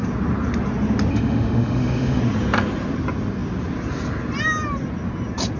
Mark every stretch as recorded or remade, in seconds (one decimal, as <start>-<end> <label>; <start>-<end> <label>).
0.0-1.1 recorded; 1.1-2.2 remade; 2.2-5.6 recorded